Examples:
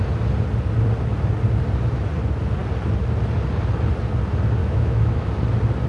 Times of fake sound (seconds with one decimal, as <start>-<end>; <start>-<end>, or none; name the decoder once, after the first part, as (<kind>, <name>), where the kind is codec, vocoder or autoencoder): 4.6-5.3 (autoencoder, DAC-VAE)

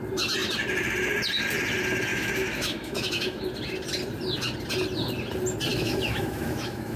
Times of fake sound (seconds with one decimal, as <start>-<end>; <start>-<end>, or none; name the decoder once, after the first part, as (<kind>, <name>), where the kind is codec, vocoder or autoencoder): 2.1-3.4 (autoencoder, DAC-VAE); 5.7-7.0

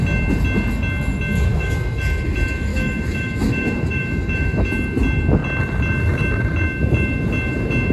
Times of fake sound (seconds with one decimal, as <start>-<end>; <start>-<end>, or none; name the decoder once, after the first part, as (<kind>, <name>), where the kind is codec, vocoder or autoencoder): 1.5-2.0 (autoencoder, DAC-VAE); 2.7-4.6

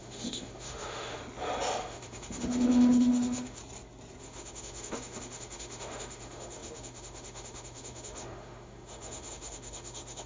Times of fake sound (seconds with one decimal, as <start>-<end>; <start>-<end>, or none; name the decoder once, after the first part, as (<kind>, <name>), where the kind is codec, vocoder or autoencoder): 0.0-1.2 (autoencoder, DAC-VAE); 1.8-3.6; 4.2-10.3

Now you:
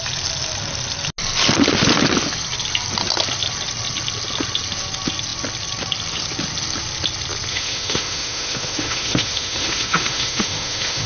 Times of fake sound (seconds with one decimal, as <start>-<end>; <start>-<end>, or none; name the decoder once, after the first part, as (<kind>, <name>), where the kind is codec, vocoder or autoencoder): 7.5-11.1 (autoencoder, DAC-VAE)

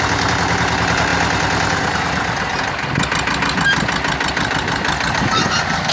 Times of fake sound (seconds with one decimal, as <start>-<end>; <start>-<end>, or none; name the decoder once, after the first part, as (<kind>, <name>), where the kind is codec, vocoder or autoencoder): none

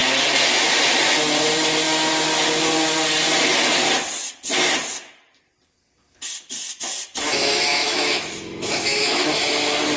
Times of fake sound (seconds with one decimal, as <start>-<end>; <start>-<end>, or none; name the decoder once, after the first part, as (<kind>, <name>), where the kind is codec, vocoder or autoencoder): 7.7-9.5 (autoencoder, DAC-VAE)